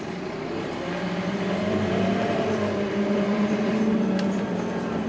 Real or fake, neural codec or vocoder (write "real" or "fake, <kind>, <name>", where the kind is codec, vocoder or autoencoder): fake, vocoder, BigVGAN v2